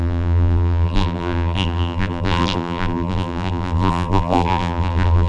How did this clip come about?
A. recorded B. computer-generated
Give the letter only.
B